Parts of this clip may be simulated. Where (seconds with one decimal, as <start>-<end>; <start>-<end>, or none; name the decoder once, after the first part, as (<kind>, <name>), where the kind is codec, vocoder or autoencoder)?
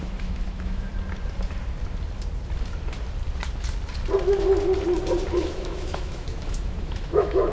0.0-0.9 (autoencoder, DAC-VAE); 5.4-7.5